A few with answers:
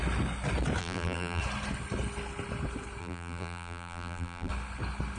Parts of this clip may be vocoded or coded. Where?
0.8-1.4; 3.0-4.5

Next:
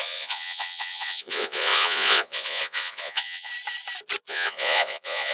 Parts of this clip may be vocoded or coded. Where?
0.0-3.5; 4.3-5.3

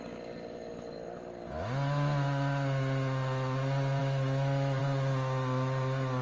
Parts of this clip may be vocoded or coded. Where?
4.0-4.8

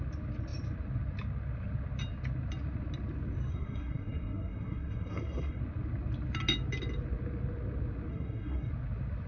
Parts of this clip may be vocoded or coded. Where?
3.5-5.6; 8.1-8.7

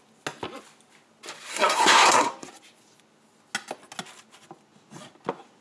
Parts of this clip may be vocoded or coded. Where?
1.5-2.3

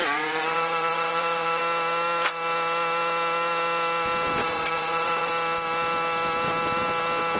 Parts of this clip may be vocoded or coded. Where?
0.0-1.6; 4.4-5.3